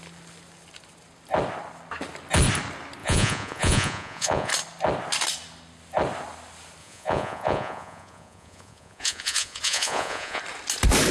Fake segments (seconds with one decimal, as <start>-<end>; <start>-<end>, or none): 3.0-4.5; 6.8-10.4